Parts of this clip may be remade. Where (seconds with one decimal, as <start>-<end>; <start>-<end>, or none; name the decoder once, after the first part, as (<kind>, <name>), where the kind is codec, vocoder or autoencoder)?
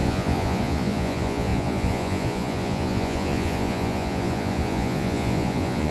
0.0-5.9 (vocoder, Vocos)